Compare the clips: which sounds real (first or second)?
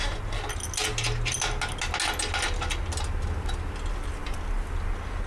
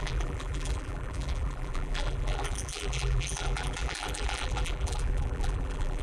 first